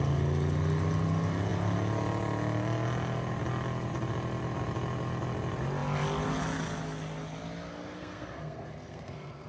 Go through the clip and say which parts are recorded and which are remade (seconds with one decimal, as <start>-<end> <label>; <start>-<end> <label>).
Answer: 0.0-7.7 recorded; 7.7-9.5 remade